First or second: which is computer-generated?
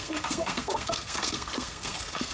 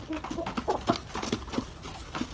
first